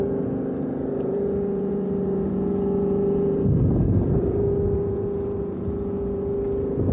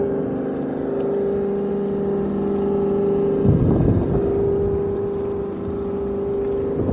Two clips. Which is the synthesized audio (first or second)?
first